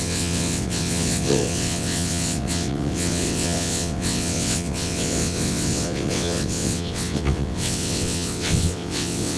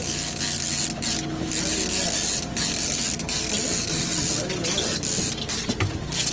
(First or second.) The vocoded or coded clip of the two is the first